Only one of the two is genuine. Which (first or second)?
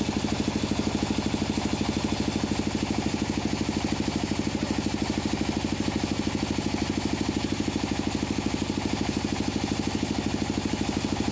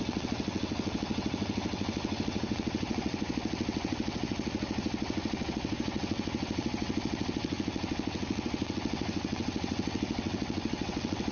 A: first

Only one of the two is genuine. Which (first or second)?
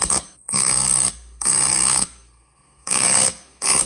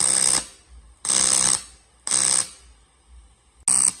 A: second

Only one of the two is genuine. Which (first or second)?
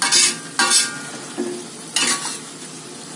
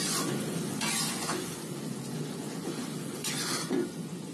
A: first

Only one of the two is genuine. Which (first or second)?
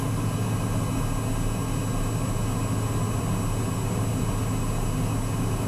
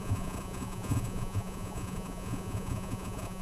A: first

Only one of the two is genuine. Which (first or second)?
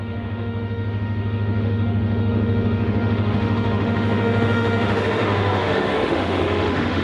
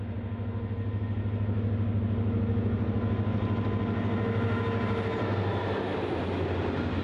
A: second